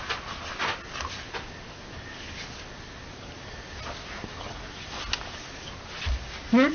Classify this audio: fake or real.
real